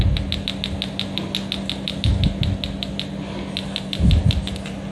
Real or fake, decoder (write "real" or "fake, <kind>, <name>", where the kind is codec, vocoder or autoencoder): real